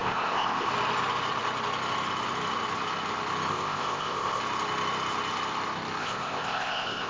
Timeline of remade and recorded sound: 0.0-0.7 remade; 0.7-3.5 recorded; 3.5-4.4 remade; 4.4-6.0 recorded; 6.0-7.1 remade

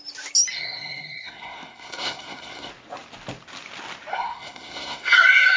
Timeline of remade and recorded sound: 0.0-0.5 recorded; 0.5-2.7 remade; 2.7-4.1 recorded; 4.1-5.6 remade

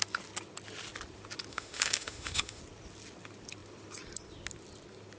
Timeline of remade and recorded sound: 0.0-1.5 recorded; 1.5-2.6 remade; 2.6-5.2 recorded

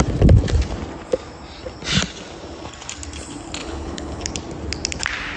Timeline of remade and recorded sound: 0.0-3.6 recorded; 3.6-4.3 remade; 4.3-5.4 recorded